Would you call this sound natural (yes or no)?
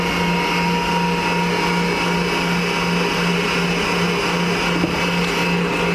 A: yes